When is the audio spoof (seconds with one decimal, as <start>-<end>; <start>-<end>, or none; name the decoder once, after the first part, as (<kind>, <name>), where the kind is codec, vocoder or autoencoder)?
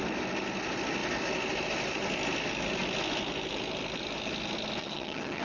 4.8-5.4 (vocoder, HiFi-GAN)